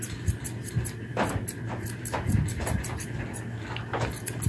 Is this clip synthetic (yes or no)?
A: no